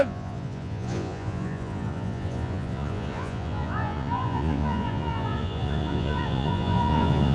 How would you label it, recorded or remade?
remade